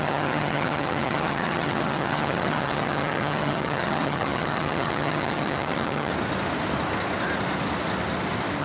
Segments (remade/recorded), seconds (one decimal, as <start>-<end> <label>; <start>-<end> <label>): 0.0-6.1 remade; 6.1-8.6 recorded